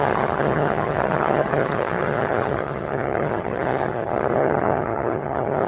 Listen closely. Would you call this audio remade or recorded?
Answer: remade